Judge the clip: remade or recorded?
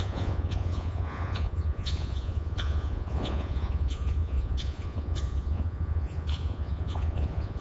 remade